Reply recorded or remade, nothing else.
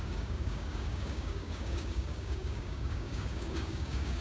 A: remade